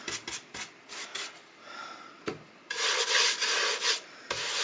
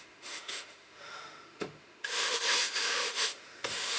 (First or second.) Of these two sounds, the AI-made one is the second